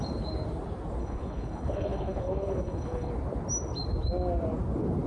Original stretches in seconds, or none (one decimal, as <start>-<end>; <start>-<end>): 0.0-1.0; 3.1-5.1